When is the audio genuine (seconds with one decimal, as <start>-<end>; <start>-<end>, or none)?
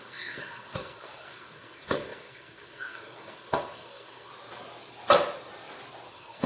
4.3-6.1